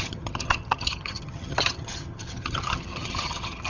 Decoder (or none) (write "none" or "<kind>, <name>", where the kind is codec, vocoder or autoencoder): vocoder, HiFi-GAN